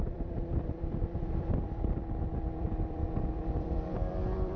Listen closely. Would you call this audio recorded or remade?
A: remade